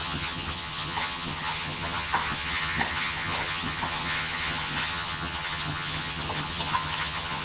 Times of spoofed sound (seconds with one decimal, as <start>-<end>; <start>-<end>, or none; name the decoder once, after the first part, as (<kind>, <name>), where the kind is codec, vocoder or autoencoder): 0.0-7.4 (vocoder, HiFi-GAN)